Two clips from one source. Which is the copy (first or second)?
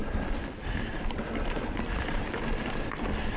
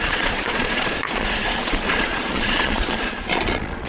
second